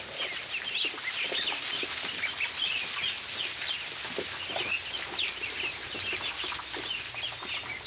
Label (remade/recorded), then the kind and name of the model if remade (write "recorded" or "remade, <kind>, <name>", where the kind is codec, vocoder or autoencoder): recorded